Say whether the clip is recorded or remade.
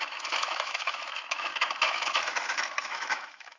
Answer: remade